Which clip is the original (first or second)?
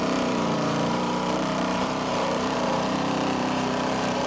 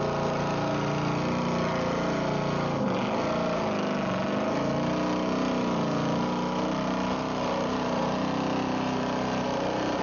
second